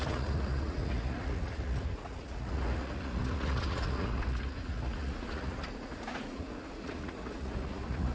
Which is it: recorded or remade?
remade